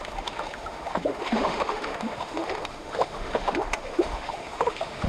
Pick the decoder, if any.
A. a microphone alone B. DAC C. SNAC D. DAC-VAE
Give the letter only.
D